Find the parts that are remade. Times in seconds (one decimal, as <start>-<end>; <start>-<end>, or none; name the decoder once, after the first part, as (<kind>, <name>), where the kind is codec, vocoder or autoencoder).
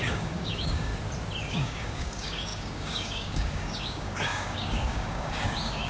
0.0-0.9 (codec, DAC); 1.5-5.9